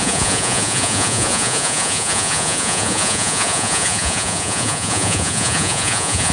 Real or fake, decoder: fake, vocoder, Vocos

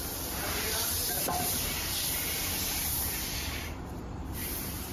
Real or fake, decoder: fake, vocoder, BigVGAN v2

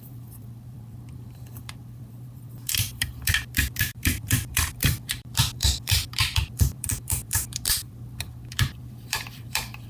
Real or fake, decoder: fake, vocoder, BigVGAN v2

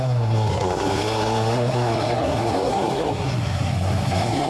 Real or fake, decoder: fake, codec, SNAC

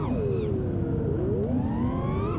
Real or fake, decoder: real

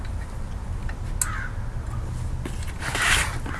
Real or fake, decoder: real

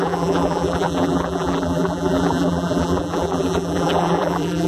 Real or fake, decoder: fake, vocoder, BigVGAN v2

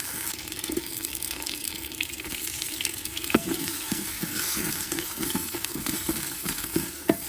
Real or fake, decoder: fake, codec, SNAC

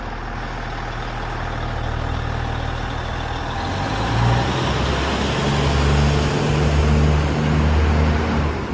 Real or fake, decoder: real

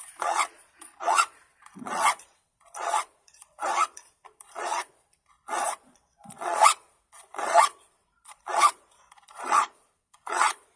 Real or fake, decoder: fake, vocoder, Vocos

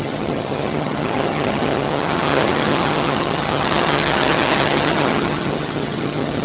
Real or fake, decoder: fake, vocoder, HiFi-GAN